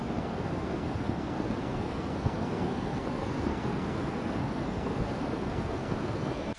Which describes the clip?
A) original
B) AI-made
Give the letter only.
B